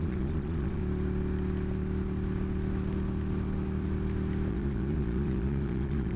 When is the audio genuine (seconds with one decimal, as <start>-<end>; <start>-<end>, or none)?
0.8-4.5

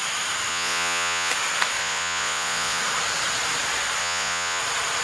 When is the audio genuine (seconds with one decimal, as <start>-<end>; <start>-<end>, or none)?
0.0-0.5; 1.3-1.8; 2.8-4.0; 4.6-5.0

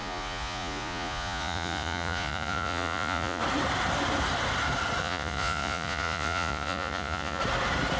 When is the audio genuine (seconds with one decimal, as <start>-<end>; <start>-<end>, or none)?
3.4-5.0; 7.4-8.0

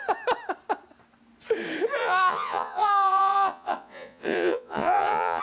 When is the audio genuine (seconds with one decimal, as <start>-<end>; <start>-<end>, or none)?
0.0-2.0

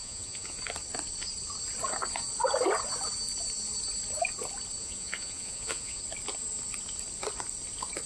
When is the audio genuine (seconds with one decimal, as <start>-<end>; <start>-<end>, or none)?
0.6-4.8; 6.0-8.1